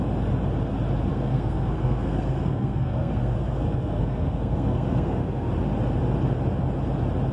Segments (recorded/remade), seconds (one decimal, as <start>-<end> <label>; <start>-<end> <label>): 0.0-1.1 recorded; 1.1-5.5 remade; 5.5-7.3 recorded